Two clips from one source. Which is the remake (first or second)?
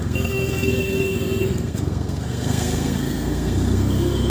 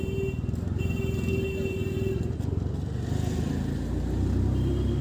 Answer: first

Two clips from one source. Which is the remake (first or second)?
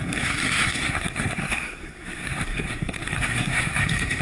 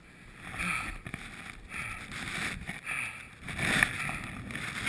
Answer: first